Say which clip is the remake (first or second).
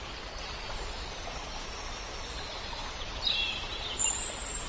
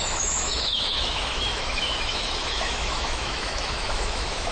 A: second